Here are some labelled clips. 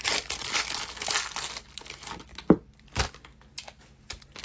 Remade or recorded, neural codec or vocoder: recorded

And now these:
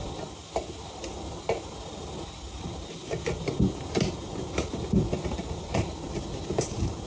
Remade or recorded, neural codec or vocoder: recorded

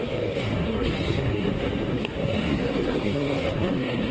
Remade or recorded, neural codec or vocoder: remade, codec, SNAC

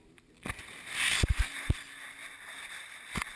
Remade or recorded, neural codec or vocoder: recorded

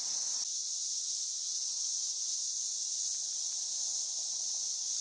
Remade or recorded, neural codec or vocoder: recorded